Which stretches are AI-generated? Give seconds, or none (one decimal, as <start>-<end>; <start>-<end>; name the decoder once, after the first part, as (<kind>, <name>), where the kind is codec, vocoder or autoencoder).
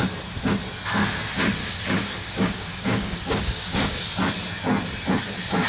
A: 1.6-4.0 (codec, DAC)